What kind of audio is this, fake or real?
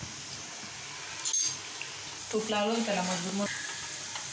real